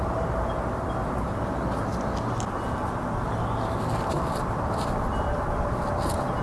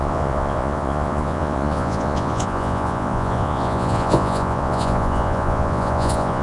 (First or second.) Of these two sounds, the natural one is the first